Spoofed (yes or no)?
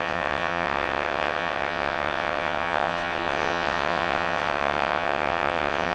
yes